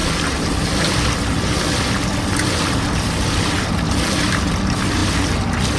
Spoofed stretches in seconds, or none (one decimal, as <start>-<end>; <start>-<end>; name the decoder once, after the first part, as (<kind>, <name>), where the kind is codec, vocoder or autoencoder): none